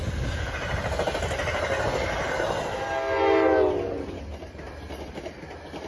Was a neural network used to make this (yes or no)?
no